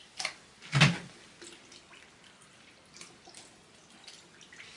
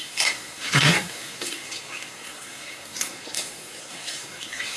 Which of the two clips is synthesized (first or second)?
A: second